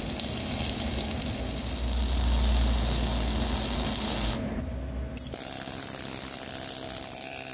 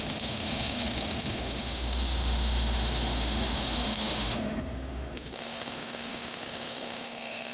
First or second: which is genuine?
first